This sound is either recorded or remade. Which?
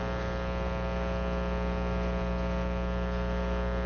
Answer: recorded